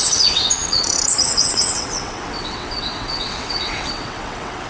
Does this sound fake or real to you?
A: fake